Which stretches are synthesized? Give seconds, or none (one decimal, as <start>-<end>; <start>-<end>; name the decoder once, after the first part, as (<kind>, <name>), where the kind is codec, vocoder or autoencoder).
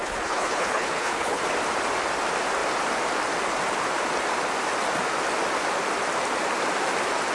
0.0-1.4 (codec, HILCodec)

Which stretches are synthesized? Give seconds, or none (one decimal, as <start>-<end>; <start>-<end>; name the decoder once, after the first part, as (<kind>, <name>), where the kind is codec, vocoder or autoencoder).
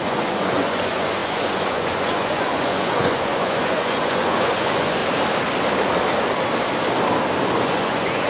0.0-5.0 (vocoder, Vocos); 7.6-8.3